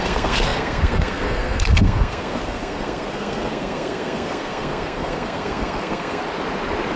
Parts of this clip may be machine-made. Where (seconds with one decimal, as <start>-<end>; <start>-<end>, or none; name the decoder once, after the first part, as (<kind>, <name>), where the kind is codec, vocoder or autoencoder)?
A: 0.0-6.2 (codec, SNAC)